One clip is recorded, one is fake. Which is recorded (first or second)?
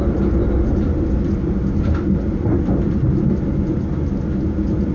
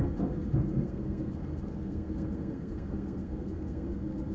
first